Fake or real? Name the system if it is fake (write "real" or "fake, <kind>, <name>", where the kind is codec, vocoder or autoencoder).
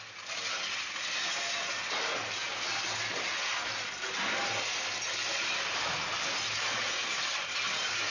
real